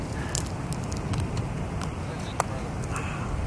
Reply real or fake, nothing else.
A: real